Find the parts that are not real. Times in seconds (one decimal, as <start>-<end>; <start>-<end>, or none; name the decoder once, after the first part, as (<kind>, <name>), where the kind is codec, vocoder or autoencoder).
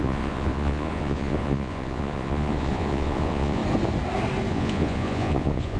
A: 0.0-3.6 (vocoder, Vocos); 4.5-5.8